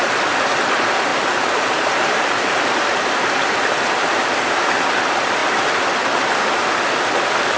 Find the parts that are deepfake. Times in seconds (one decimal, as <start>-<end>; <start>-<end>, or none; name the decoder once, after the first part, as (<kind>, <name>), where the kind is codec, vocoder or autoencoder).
1.1-3.1 (vocoder, BigVGAN v2)